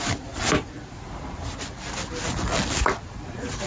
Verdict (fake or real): real